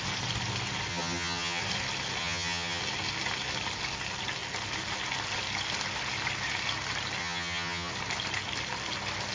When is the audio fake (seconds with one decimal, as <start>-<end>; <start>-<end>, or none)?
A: 0.9-1.6; 2.2-2.8; 7.2-7.9